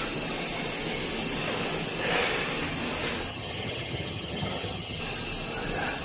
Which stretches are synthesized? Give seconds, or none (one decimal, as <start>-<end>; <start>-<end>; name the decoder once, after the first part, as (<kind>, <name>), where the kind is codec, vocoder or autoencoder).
3.3-5.0 (vocoder, HiFi-GAN)